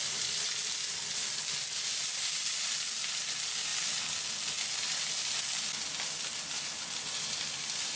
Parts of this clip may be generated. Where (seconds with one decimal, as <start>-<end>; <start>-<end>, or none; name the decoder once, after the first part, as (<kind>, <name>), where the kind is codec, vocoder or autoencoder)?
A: none